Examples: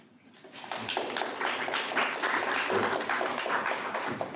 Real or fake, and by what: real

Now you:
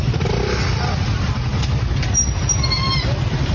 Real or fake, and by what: real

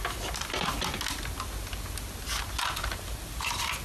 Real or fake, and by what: real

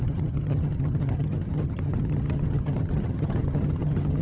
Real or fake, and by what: fake, vocoder, HiFi-GAN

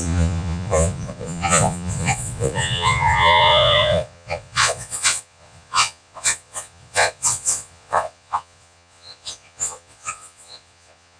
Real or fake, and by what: fake, vocoder, Vocos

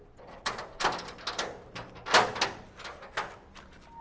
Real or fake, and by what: real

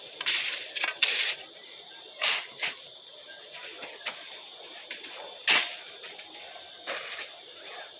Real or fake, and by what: fake, vocoder, BigVGAN v2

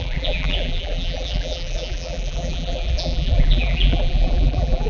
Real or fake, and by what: fake, vocoder, BigVGAN v2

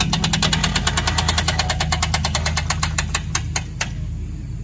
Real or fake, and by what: real